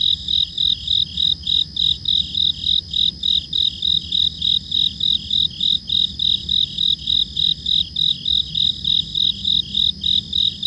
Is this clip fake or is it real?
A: real